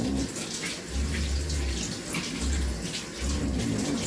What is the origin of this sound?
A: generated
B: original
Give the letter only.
B